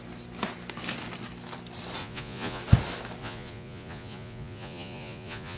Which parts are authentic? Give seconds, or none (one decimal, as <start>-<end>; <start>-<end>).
0.0-2.0; 2.6-3.2